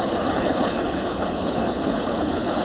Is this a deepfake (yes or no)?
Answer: yes